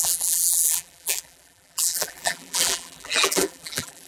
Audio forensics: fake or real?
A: fake